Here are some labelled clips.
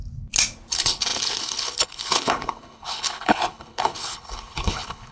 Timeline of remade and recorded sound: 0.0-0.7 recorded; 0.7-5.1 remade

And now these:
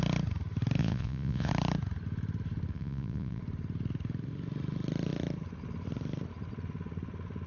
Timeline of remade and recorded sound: 0.0-0.8 recorded; 0.8-1.5 remade; 1.5-2.7 recorded; 2.7-3.4 remade; 3.4-7.5 recorded

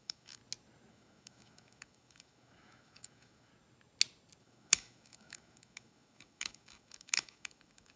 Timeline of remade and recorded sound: 0.0-0.4 remade; 0.4-0.9 recorded; 0.9-3.5 remade; 3.5-4.4 recorded; 4.4-8.0 remade